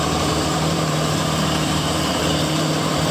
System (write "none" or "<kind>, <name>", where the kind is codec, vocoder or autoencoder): vocoder, BigVGAN v2